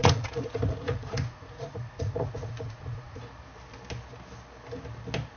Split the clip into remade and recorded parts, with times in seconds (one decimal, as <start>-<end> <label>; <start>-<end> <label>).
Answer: 0.0-3.2 remade; 3.2-5.4 recorded

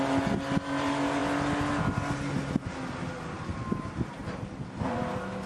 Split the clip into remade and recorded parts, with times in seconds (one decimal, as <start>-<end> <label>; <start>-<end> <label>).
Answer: 0.0-5.5 recorded

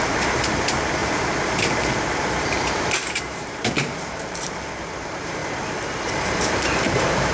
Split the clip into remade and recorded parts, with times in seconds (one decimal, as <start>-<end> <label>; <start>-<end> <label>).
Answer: 0.0-5.4 remade; 5.4-6.1 recorded; 6.1-7.3 remade

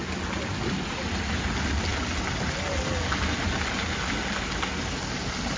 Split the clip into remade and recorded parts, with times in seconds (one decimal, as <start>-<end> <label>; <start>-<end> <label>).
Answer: 0.0-5.6 recorded

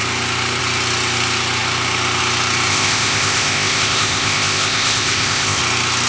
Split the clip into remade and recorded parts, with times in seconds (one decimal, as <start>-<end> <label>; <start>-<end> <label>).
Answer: 0.0-2.7 recorded; 2.7-5.6 remade; 5.6-6.1 recorded